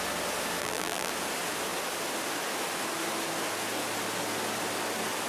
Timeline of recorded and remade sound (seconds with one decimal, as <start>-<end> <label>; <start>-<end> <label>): 0.0-0.6 recorded; 0.6-1.1 remade; 1.1-5.3 recorded